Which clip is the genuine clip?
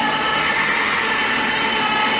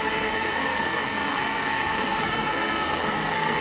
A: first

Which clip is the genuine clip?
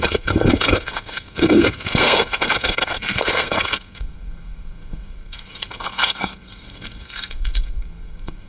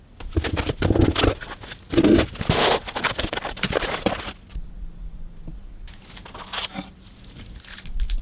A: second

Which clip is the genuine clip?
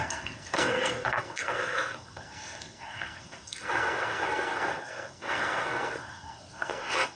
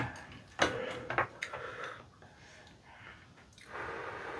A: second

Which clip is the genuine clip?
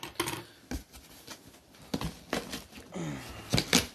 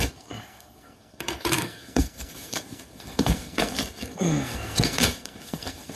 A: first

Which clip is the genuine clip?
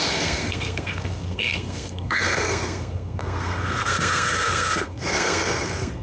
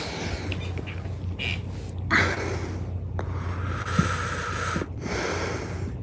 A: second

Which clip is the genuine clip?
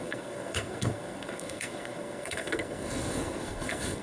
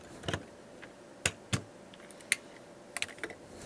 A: second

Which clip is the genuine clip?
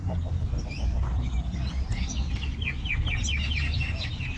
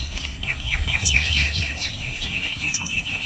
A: first